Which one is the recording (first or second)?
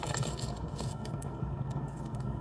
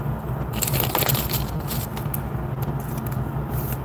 second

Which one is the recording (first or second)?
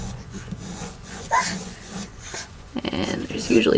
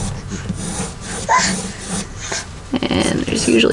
second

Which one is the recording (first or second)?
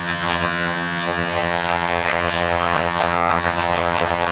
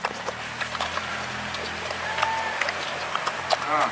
second